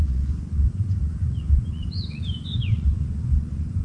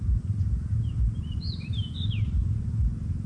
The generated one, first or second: first